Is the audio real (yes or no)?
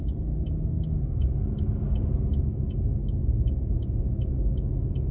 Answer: yes